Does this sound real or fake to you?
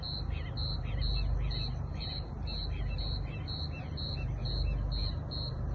real